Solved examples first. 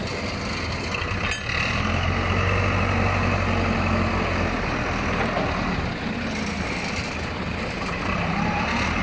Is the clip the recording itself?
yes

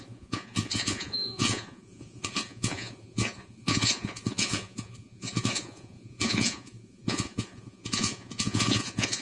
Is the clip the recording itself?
no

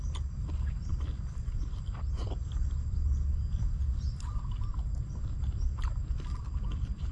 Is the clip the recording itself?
yes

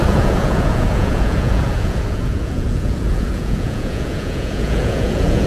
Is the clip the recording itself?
no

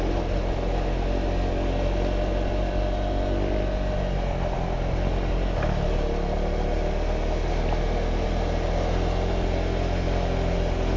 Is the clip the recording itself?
yes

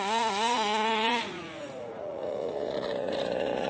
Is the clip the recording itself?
no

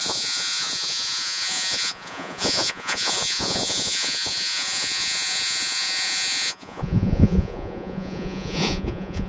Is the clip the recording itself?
no